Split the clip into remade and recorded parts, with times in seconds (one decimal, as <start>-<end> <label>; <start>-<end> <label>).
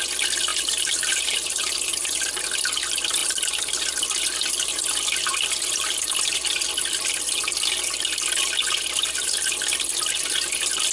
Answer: 0.0-0.5 recorded; 0.5-2.4 remade; 2.4-3.2 recorded; 3.2-3.8 remade; 3.8-10.9 recorded